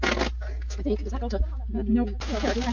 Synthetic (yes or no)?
no